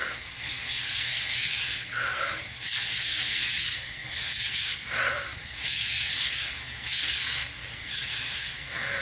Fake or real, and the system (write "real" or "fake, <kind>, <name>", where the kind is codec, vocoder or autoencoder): fake, codec, SNAC